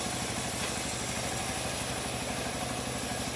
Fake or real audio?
real